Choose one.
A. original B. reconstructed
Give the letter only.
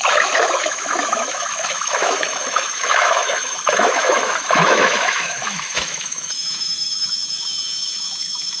B